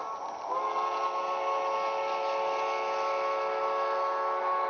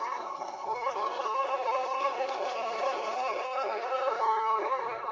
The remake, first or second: second